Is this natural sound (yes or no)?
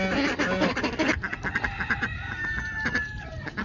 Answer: yes